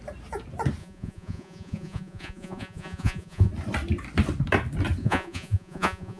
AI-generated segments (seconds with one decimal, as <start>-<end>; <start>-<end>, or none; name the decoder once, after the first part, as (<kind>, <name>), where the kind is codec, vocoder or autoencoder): 0.8-3.5 (vocoder, Vocos); 5.0-6.2

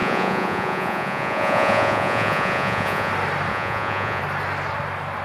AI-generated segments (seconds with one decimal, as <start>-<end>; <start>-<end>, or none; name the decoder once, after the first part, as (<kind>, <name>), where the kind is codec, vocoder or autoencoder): 0.0-3.1 (vocoder, Vocos); 3.5-4.2